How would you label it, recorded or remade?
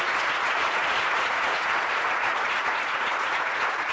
remade